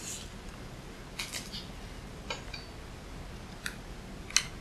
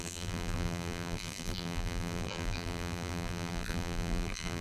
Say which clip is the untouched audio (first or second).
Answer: first